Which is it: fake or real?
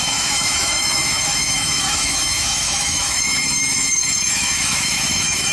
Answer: fake